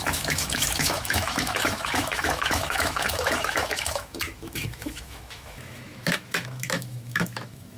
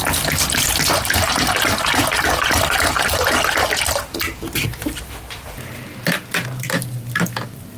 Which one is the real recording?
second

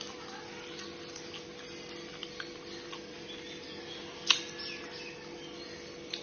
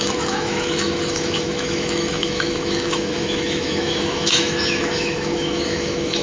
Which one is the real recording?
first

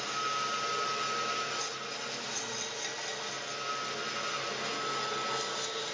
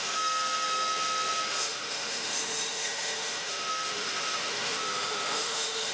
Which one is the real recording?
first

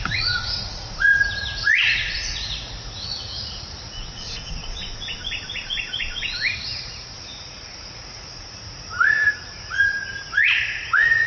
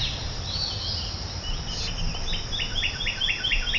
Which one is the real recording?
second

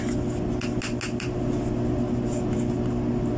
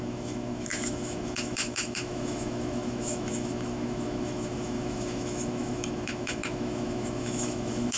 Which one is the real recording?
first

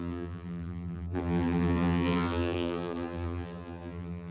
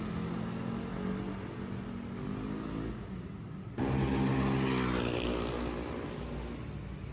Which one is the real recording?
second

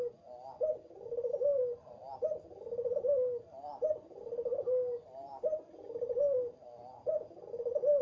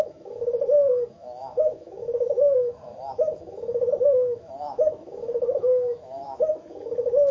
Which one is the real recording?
first